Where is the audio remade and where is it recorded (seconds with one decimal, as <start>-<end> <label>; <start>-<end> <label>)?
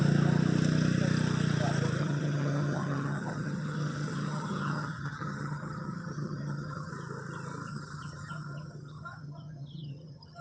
0.0-2.0 recorded; 2.0-6.9 remade; 6.9-7.7 recorded; 7.7-10.4 remade